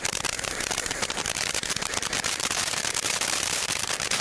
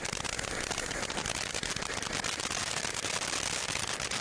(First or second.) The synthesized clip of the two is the first